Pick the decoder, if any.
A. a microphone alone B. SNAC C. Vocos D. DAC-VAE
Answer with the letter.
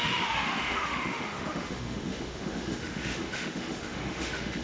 D